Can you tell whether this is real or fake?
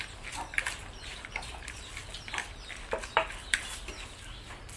real